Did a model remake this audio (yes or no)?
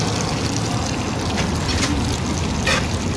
no